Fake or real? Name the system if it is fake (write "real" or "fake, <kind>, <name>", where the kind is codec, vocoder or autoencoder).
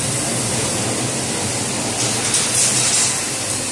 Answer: real